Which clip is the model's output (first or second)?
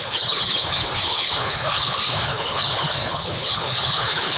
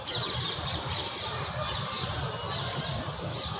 first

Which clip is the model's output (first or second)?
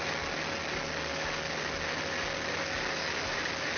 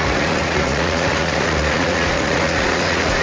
second